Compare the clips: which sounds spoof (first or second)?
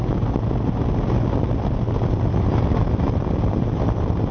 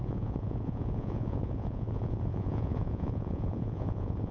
second